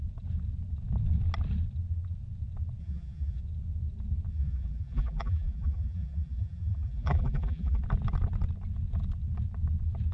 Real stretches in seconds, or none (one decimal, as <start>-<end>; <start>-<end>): 0.0-2.8; 3.4-4.3; 7.8-10.1